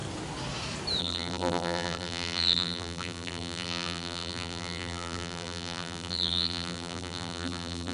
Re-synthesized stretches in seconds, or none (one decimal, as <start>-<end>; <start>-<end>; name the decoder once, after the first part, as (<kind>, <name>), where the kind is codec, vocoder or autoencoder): 1.0-7.9 (vocoder, BigVGAN v2)